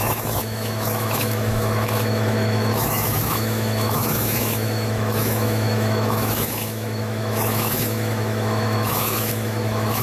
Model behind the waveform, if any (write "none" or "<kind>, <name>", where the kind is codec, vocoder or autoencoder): autoencoder, DAC-VAE